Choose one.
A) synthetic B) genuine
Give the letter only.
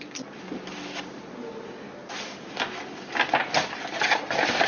B